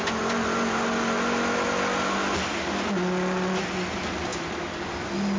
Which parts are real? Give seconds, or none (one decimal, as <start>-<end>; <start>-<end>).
0.0-5.4